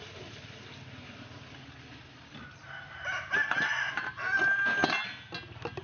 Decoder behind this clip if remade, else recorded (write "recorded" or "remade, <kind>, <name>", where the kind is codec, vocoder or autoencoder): recorded